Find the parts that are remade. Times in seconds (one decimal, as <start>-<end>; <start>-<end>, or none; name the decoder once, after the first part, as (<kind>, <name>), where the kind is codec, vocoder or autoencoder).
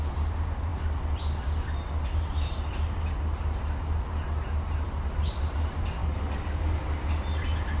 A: 6.0-6.8 (codec, DAC)